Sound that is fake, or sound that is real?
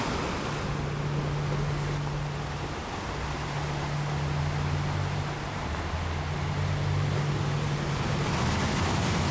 real